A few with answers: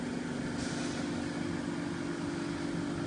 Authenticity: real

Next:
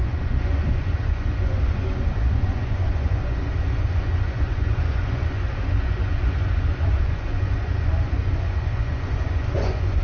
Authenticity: fake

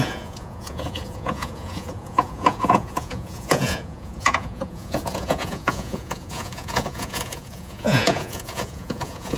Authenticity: fake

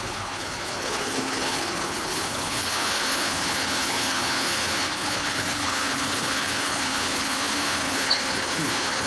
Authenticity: fake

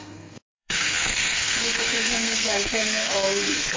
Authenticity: fake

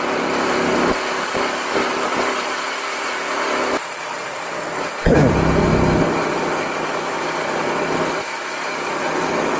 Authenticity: real